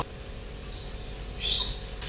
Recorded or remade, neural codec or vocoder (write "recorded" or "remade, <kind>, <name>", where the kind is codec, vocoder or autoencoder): recorded